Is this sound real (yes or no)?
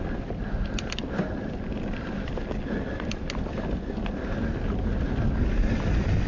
yes